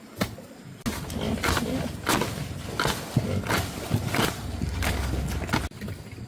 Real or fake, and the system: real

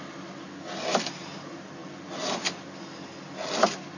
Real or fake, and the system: real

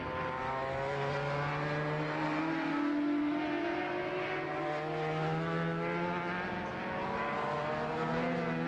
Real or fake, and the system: real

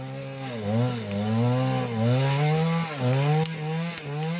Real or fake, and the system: real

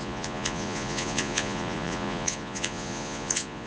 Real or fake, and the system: fake, vocoder, Vocos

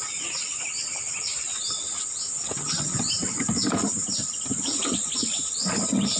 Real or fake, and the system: real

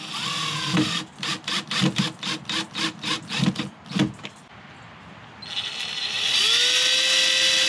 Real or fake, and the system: real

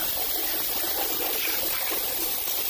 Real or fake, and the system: real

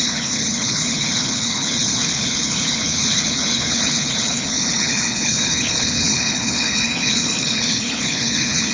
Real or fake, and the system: fake, codec, HILCodec